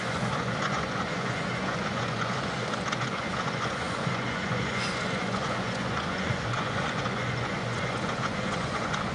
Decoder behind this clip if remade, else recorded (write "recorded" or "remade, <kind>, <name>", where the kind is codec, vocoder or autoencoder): remade, vocoder, Vocos